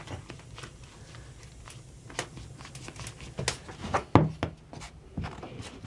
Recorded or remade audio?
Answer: recorded